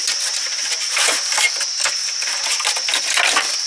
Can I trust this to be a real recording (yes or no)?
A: yes